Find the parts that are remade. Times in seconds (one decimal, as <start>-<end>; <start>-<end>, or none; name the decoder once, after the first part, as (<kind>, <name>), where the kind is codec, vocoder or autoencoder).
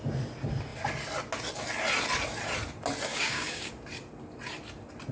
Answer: 3.1-3.7 (codec, DAC)